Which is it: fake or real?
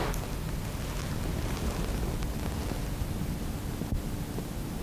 real